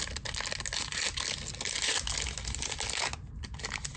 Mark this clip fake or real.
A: real